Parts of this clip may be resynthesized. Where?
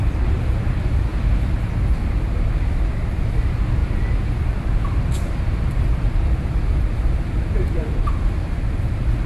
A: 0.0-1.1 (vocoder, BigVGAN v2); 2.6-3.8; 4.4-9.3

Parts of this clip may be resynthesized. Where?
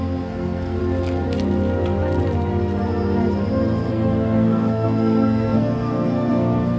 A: 0.0-0.8 (codec, SNAC); 3.9-6.8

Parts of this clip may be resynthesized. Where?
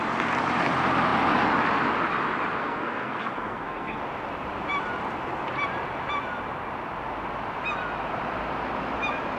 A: 2.6-4.0 (codec, SNAC)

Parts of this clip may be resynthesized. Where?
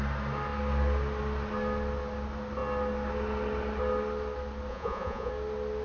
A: 4.7-5.3 (vocoder, Vocos)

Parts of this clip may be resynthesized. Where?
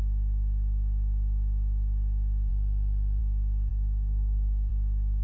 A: 3.7-4.7 (codec, SNAC)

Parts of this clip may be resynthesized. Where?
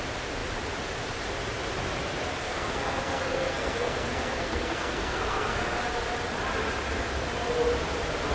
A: 2.4-5.8 (codec, SNAC)